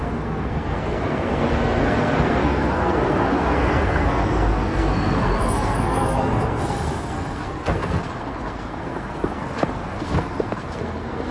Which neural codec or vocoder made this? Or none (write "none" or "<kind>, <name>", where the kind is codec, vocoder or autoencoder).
codec, SNAC